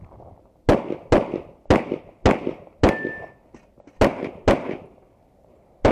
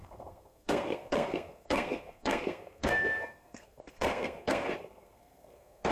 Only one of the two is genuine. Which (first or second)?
first